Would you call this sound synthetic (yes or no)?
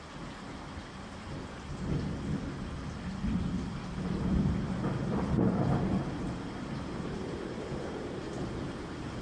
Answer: no